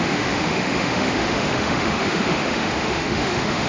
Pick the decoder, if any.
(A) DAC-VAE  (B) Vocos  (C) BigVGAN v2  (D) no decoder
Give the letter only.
A